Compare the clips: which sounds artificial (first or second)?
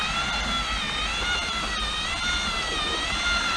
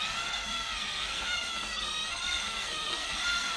second